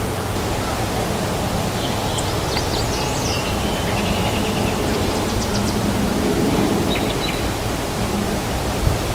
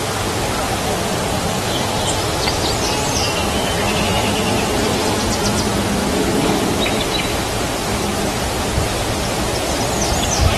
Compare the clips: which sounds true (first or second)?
first